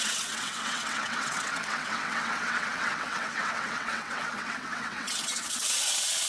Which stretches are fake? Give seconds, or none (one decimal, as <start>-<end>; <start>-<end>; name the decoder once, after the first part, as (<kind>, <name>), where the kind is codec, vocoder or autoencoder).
0.0-6.3 (vocoder, WaveNeXt)